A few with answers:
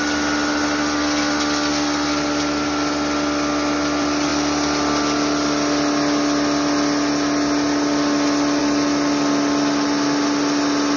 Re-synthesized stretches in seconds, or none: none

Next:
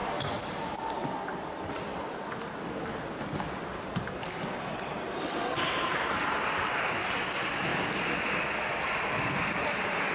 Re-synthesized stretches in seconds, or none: none

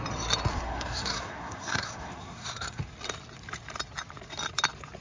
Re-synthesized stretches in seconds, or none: 0.5-2.9 (codec, SNAC)

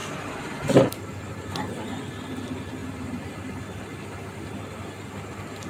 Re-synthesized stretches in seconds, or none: 0.0-0.8 (vocoder, BigVGAN v2)

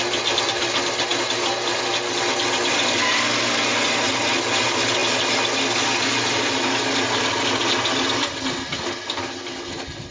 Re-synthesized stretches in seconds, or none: none

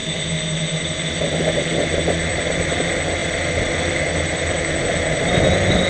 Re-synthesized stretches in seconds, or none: 0.0-1.1 (vocoder, BigVGAN v2); 2.3-2.8

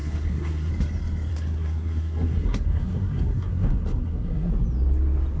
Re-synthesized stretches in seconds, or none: 0.0-0.7 (codec, SNAC); 1.3-4.5